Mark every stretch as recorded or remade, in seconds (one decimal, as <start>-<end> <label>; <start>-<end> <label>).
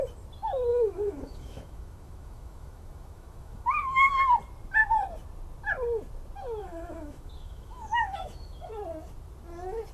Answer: 0.0-0.7 recorded; 0.7-4.2 remade; 4.2-6.6 recorded; 6.6-8.7 remade; 8.7-9.9 recorded